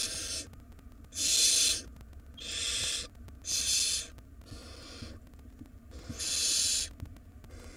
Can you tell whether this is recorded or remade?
recorded